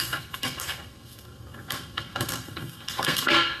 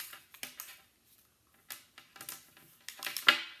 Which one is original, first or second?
second